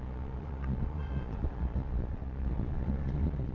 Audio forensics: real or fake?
fake